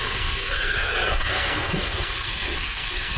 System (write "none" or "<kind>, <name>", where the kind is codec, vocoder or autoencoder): codec, SNAC